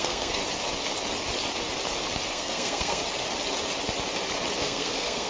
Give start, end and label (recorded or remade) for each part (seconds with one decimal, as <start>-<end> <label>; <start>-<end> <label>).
0.0-0.4 remade; 0.4-2.3 recorded; 2.3-3.0 remade; 3.0-4.6 recorded; 4.6-5.3 remade